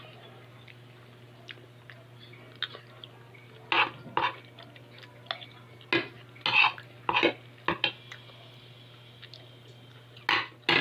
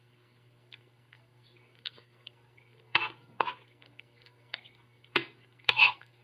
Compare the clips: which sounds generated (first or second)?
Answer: second